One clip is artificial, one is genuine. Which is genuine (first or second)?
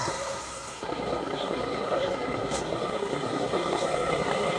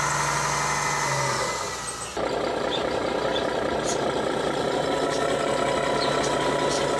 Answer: second